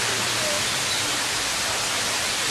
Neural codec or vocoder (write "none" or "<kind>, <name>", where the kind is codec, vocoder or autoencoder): vocoder, BigVGAN v2